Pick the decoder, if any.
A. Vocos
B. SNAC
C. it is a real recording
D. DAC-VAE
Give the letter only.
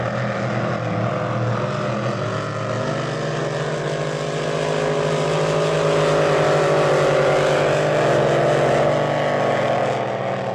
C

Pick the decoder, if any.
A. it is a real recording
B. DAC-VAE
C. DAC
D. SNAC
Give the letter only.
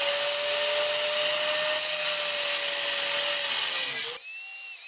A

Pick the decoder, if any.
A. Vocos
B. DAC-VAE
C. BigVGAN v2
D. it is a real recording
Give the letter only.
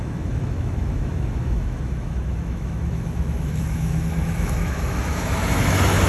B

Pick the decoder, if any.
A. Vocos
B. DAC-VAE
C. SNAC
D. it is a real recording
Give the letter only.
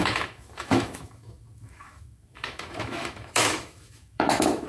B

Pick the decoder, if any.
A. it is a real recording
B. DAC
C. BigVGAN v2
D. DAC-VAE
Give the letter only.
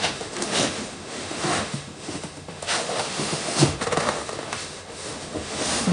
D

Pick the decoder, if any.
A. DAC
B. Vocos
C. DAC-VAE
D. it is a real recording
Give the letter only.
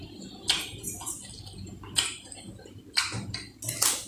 D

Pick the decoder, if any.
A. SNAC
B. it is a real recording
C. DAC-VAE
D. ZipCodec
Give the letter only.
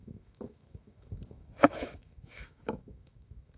C